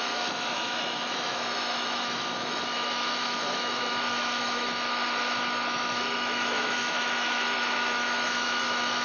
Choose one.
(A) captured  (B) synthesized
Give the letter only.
B